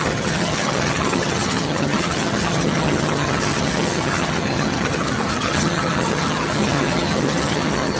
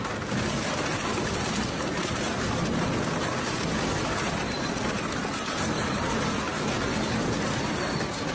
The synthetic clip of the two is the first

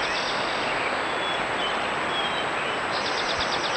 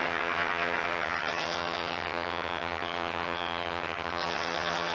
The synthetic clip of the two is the second